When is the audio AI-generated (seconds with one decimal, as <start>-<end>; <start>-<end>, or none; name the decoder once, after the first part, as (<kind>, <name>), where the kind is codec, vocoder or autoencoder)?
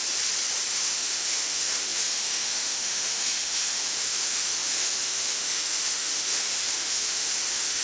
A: 0.7-7.8 (autoencoder, DAC-VAE)